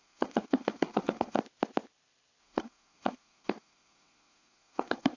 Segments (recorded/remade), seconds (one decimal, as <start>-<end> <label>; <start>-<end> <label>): 0.0-1.4 remade; 1.4-2.4 recorded; 2.4-5.2 remade